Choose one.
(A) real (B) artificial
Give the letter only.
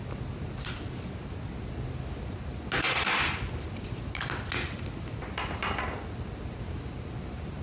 A